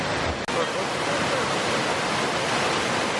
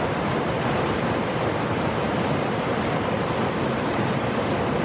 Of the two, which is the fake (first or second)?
second